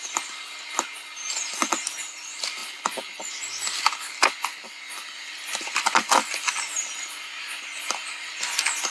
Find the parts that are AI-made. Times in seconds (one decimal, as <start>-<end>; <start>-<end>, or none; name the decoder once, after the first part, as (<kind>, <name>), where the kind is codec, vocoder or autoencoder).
none